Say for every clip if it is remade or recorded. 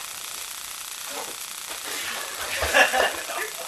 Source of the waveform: recorded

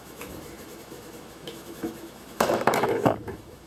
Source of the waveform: remade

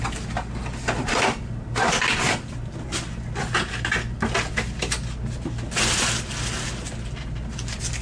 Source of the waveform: recorded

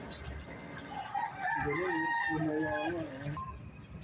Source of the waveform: recorded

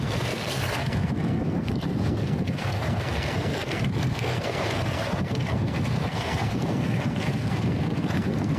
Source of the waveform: remade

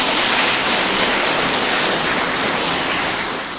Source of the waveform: recorded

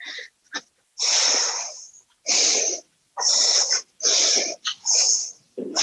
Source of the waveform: recorded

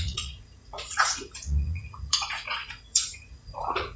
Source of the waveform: remade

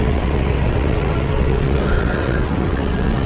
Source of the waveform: remade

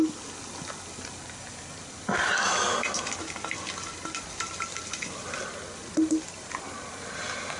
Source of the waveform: recorded